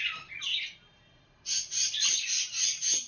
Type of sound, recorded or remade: recorded